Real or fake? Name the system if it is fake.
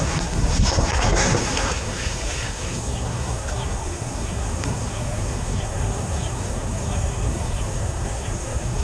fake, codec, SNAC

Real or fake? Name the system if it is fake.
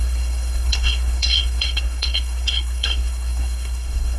fake, codec, SNAC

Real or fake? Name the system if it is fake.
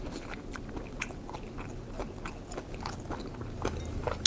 real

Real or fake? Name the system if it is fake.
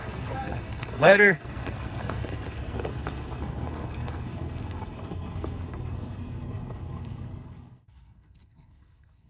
fake, codec, SNAC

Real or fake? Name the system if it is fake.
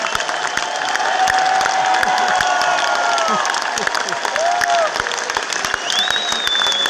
real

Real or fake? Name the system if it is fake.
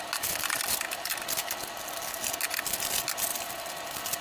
real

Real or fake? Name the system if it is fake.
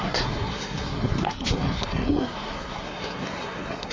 fake, codec, SNAC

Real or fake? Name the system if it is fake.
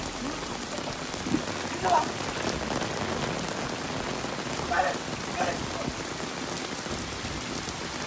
real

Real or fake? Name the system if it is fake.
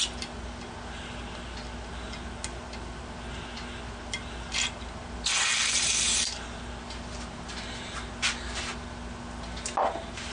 real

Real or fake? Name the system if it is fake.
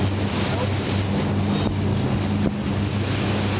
real